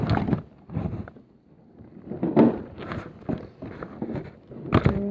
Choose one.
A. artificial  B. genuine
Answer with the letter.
B